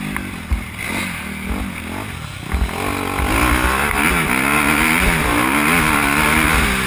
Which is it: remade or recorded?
recorded